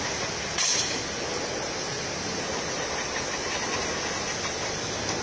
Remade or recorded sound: recorded